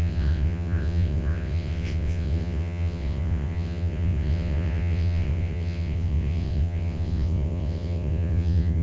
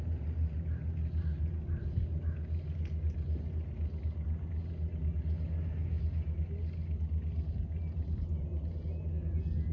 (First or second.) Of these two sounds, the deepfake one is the first